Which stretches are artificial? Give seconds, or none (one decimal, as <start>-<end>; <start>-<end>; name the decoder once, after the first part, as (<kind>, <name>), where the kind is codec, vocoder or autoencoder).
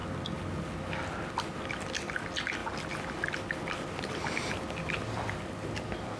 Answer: none